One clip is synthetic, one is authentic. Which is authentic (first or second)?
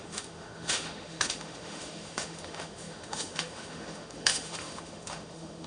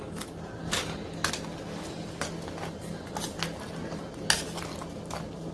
second